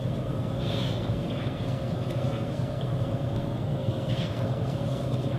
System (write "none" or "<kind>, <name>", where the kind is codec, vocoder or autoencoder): codec, SNAC